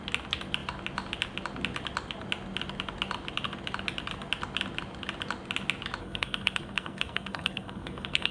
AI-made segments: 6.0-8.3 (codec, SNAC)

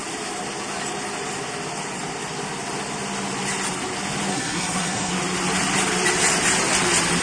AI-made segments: 4.3-5.1 (codec, SNAC)

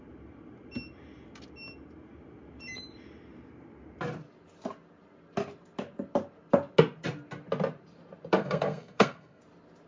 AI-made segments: 8.4-9.4 (codec, SNAC)

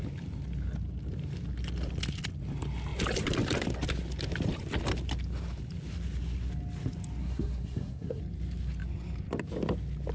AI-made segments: 7.2-8.2 (codec, SNAC)

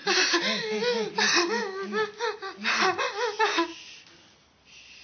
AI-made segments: none

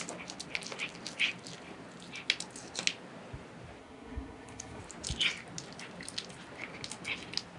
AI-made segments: 3.8-4.8 (codec, SNAC)

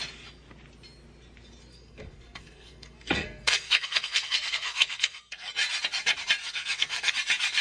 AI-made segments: 1.7-5.5 (codec, SNAC); 6.4-7.1